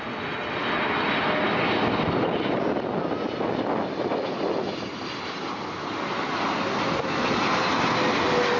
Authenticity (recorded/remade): recorded